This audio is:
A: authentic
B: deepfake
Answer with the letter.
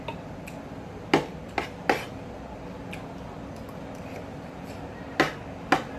A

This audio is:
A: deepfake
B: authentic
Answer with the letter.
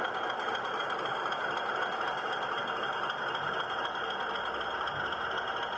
B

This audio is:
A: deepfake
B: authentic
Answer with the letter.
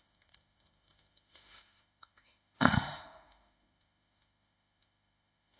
A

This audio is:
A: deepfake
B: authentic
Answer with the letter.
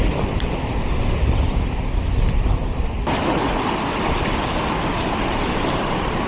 B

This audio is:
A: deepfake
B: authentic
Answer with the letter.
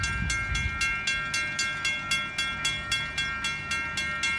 B